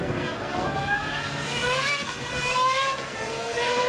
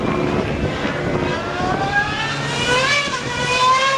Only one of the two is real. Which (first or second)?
second